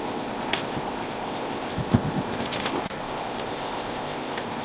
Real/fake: fake